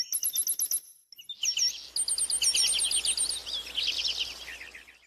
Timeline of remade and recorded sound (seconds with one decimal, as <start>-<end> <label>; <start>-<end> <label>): 0.0-5.1 recorded